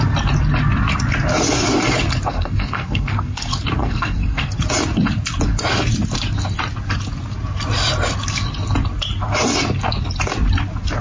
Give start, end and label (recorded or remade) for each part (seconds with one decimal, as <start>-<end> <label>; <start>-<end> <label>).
0.0-2.3 recorded; 2.3-3.4 remade; 3.4-3.8 recorded; 3.8-4.6 remade; 4.6-11.0 recorded